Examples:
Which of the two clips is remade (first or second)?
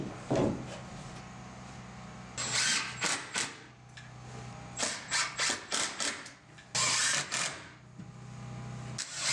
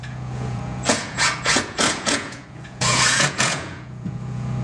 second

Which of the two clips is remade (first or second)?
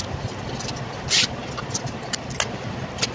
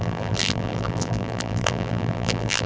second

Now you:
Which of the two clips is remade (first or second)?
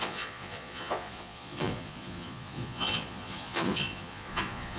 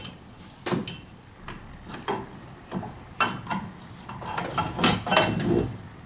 first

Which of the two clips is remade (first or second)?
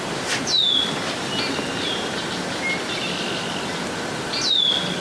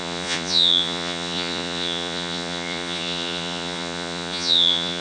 second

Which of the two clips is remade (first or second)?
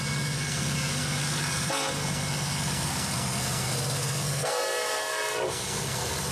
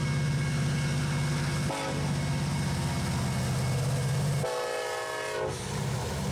first